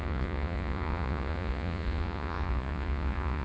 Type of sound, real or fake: fake